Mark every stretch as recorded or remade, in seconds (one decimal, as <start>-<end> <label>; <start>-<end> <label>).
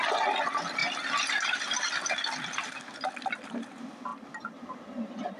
0.0-5.4 recorded